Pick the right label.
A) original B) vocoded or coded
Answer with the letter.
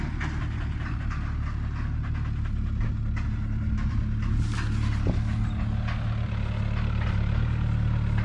A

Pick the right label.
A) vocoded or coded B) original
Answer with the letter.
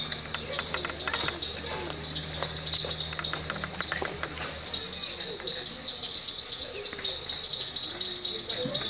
B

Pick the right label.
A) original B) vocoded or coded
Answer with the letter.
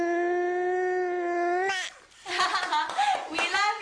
A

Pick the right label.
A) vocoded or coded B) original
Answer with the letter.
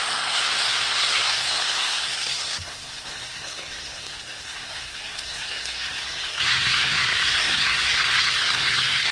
A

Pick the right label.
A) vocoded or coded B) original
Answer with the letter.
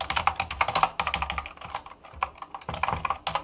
B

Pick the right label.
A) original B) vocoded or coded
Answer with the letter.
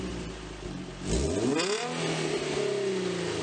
A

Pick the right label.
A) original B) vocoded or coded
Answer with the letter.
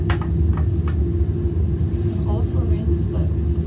A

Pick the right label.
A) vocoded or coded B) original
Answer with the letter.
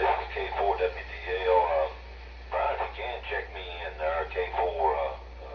B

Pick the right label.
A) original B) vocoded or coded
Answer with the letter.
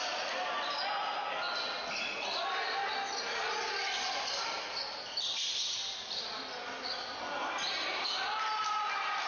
A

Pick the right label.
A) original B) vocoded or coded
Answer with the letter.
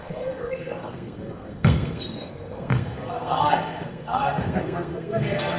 B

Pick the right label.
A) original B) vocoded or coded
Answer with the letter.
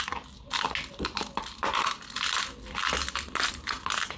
A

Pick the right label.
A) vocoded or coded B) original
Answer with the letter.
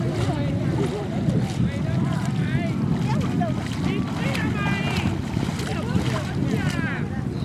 B